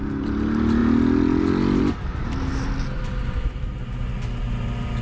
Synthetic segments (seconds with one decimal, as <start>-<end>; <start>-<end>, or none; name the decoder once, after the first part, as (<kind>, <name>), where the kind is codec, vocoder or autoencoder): none